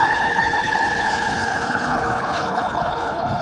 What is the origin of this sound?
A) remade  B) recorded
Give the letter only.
A